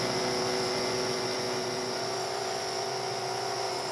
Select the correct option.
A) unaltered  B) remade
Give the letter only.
B